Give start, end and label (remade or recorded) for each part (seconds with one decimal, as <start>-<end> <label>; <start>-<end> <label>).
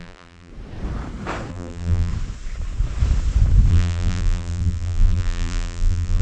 0.0-0.5 remade; 0.5-1.5 recorded; 1.5-2.1 remade; 2.1-3.7 recorded; 3.7-6.2 remade